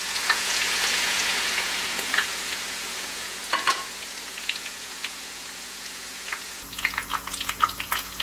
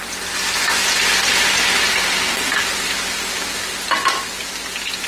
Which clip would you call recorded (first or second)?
second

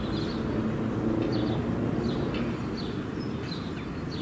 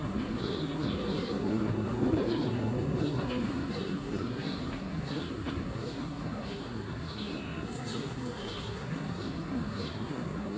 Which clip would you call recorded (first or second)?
first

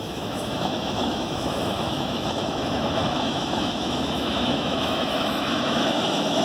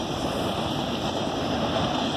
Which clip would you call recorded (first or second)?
second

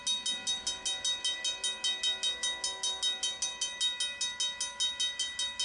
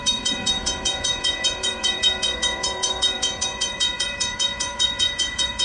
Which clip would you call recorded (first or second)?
first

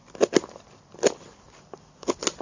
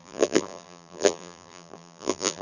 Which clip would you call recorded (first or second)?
first